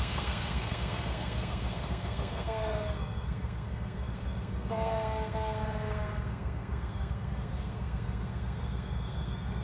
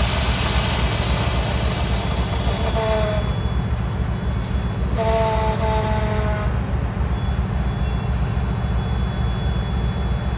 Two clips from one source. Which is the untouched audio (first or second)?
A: second